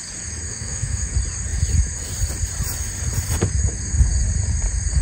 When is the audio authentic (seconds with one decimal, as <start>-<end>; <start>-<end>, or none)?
0.0-0.5; 1.1-5.0